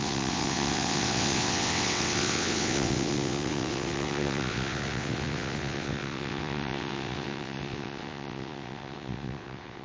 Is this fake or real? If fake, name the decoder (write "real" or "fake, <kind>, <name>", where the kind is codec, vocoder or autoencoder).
fake, vocoder, WaveNeXt